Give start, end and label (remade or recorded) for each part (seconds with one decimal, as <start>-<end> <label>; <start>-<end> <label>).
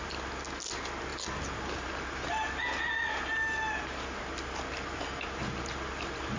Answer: 0.0-6.4 recorded